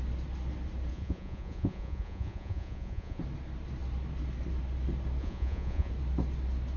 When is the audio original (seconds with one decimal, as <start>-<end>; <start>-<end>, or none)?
0.0-0.9; 3.2-5.2; 5.9-6.8